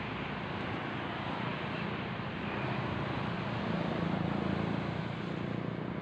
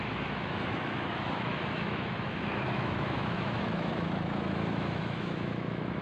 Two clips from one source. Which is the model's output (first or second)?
second